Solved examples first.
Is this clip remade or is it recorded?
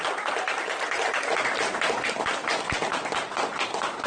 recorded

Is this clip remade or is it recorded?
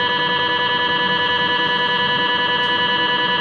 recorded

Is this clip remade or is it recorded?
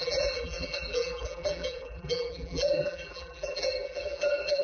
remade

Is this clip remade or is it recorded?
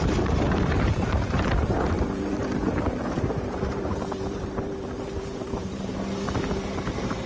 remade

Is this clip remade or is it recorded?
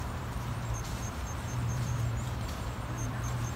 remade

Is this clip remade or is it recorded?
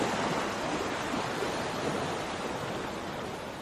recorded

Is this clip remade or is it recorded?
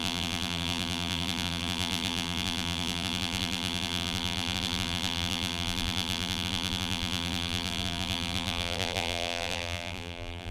remade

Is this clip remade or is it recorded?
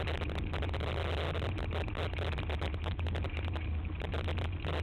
recorded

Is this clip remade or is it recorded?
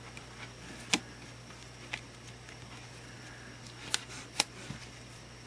recorded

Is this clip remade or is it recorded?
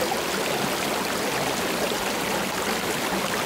recorded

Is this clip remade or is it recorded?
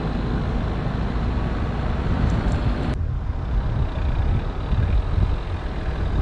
recorded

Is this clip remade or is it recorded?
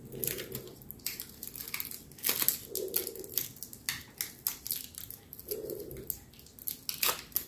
recorded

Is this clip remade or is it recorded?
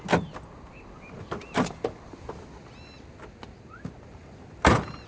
recorded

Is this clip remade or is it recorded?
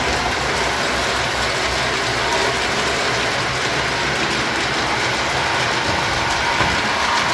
recorded